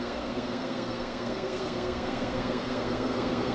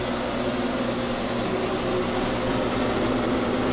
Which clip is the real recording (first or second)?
second